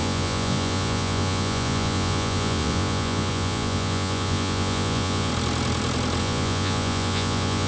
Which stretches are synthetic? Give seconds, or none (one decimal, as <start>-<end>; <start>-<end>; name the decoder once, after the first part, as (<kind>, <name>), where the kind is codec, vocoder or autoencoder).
0.0-5.3 (vocoder, Vocos); 6.2-7.7